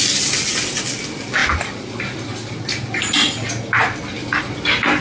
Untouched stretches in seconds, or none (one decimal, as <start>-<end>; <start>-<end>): 0.0-5.0